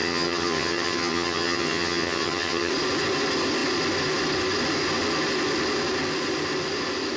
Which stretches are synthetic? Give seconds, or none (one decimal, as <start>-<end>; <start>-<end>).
0.0-2.7